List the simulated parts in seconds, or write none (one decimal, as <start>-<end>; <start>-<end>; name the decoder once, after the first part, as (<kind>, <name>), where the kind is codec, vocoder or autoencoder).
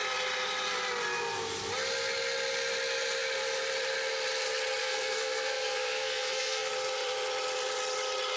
4.8-6.7 (codec, SNAC)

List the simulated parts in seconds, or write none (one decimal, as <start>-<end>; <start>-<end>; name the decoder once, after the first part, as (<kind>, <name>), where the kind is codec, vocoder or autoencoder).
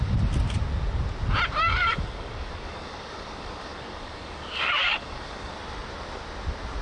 1.6-5.5 (codec, DAC)